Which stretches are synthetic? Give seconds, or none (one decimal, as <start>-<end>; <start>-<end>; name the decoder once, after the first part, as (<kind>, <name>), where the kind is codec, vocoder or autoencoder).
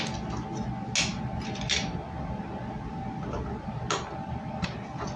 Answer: none